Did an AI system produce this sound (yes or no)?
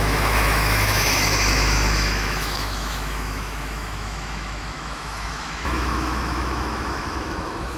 yes